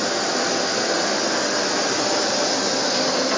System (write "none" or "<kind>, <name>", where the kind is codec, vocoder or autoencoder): none